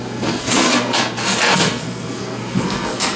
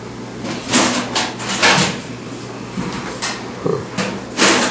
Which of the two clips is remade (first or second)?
first